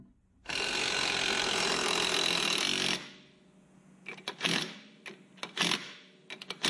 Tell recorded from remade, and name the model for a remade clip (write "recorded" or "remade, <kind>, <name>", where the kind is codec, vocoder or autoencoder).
recorded